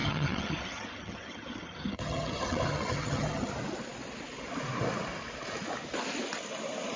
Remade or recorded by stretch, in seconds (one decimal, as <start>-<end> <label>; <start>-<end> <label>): 0.0-3.5 remade; 3.5-7.0 recorded